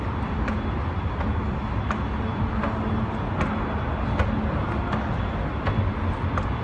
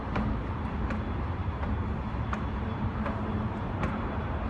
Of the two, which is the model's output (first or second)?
second